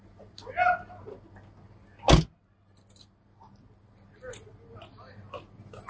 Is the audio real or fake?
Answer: real